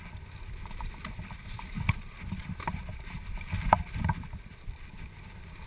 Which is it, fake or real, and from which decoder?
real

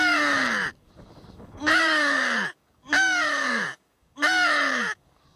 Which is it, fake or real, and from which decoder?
fake, codec, DAC